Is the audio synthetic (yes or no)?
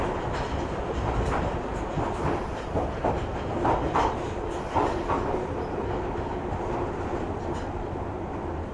no